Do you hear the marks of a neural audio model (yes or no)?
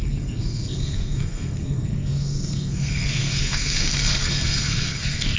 yes